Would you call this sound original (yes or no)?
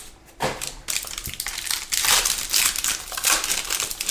yes